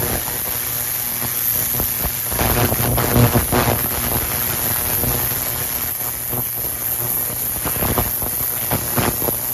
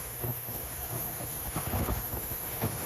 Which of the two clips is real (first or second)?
first